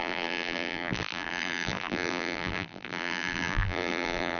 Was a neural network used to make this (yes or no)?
yes